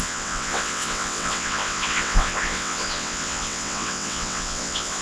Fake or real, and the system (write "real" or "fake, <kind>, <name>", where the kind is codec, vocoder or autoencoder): fake, vocoder, WaveNeXt